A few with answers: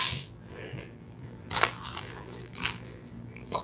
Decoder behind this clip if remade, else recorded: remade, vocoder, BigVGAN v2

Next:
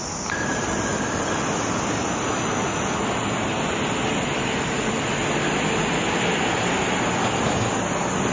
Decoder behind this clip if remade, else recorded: recorded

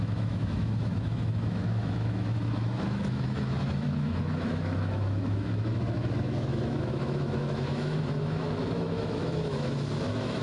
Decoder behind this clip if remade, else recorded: remade, autoencoder, DAC-VAE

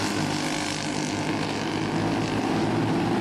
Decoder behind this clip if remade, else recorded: recorded